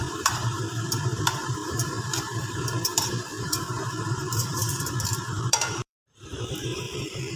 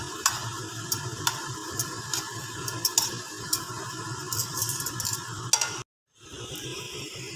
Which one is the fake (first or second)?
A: first